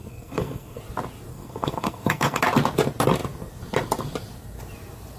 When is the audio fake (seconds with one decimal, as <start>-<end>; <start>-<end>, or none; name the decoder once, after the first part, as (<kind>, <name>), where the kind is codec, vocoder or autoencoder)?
0.0-0.8 (codec, SNAC); 1.3-2.4